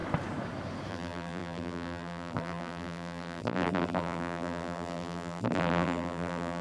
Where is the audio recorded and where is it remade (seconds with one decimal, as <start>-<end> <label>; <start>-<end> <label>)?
0.0-0.9 recorded; 0.9-6.6 remade